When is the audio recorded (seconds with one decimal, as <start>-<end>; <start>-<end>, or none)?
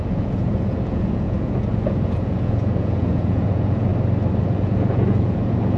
3.9-4.4